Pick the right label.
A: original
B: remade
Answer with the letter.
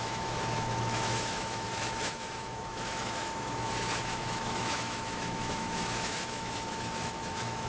B